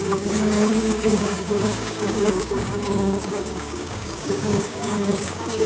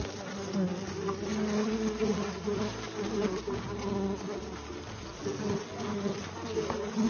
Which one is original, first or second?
second